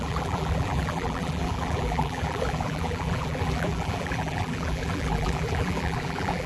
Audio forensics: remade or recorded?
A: remade